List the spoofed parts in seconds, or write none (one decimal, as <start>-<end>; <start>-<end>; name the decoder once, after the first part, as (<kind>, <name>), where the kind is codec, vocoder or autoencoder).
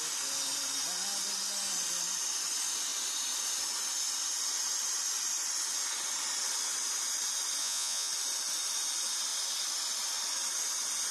7.6-8.1 (vocoder, Vocos)